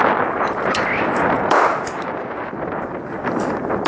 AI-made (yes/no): no